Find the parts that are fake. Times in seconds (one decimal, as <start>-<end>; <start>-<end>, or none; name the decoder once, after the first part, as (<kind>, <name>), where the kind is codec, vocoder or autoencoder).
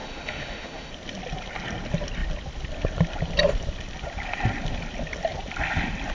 0.0-0.9 (autoencoder, DAC-VAE)